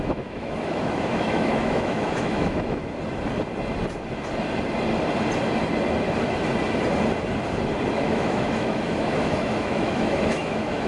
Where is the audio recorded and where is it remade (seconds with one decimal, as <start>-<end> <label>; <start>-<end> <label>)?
0.0-2.8 remade; 2.8-7.9 recorded; 7.9-10.9 remade